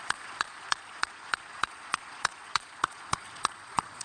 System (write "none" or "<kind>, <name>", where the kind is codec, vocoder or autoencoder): vocoder, Vocos